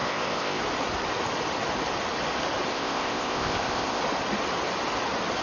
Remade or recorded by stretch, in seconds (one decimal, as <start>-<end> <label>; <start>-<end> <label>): 0.0-0.6 remade; 0.6-2.7 recorded; 2.7-4.0 remade; 4.0-5.4 recorded